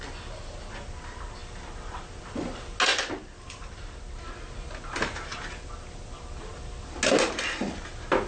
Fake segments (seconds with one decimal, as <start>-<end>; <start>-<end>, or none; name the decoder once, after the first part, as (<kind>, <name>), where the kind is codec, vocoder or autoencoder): 1.4-2.2 (vocoder, BigVGAN v2); 2.9-4.5; 5.3-6.2